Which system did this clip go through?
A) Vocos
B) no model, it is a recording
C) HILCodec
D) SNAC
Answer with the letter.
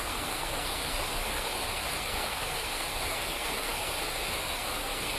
D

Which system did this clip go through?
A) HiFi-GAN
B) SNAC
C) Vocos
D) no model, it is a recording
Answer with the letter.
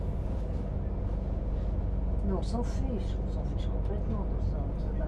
D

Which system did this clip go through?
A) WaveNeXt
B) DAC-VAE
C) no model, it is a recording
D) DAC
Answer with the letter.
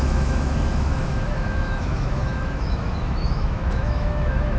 B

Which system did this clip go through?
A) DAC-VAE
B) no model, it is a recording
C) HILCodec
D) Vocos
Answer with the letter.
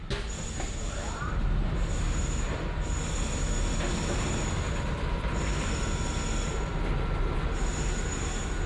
B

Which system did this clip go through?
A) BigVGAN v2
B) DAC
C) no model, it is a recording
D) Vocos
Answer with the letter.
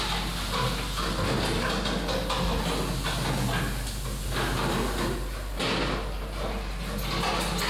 C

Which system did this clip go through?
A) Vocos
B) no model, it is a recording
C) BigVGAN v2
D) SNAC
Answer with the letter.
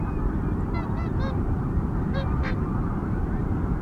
C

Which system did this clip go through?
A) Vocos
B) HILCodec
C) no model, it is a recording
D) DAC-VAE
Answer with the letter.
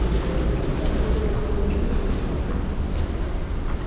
C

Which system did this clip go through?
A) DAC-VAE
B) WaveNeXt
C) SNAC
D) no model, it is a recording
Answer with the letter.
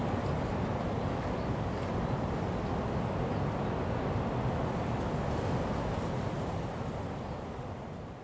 D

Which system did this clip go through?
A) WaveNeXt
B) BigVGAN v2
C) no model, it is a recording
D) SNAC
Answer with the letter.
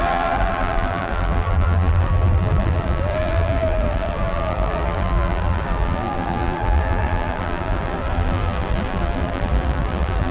B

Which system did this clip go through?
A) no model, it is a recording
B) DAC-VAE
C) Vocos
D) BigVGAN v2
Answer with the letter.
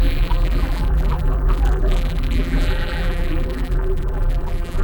D